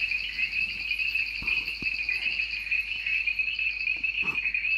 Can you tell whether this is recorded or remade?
recorded